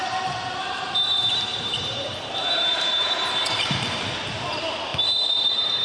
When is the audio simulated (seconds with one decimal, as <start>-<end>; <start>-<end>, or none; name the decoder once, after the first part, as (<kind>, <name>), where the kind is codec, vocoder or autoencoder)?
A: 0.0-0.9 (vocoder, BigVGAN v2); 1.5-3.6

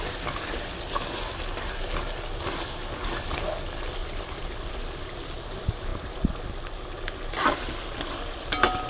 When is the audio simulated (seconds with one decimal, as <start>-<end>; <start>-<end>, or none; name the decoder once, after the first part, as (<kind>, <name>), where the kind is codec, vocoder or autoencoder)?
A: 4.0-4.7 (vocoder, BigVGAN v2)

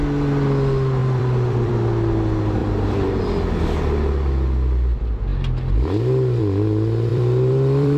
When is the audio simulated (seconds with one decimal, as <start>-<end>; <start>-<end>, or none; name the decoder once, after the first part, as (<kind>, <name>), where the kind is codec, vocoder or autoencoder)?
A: 1.0-1.7 (vocoder, BigVGAN v2); 2.6-3.2; 7.1-8.0

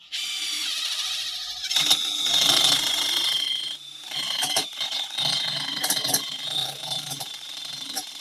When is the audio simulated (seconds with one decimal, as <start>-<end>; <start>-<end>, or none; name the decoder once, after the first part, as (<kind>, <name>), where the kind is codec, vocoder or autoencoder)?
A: 0.6-1.8 (vocoder, BigVGAN v2); 4.0-5.2; 6.6-8.2